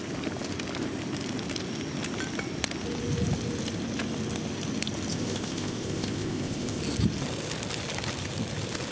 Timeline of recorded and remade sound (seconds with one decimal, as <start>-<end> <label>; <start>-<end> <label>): 0.0-5.1 recorded; 5.1-6.8 remade; 6.8-8.9 recorded